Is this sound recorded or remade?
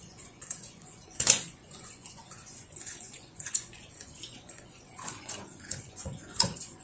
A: remade